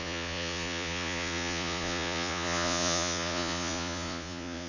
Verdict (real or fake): fake